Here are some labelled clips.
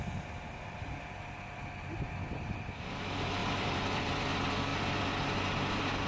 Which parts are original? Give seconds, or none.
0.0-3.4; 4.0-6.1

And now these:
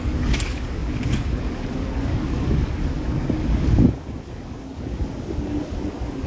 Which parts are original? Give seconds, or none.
none

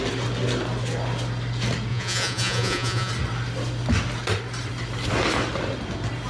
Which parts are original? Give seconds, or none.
0.0-1.9; 3.1-6.3